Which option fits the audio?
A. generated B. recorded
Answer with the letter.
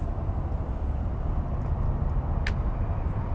B